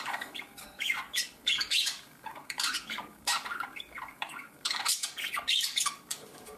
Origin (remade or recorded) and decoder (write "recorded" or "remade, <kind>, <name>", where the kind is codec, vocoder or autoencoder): remade, codec, DAC